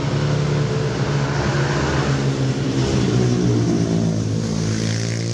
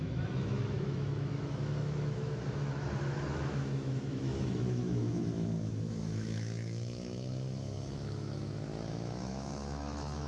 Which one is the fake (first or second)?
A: second